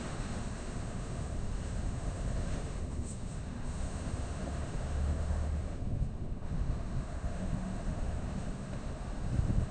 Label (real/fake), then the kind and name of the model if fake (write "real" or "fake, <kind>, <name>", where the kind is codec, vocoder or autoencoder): fake, autoencoder, DAC-VAE